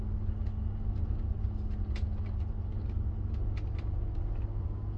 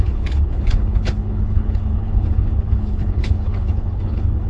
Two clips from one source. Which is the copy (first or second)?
second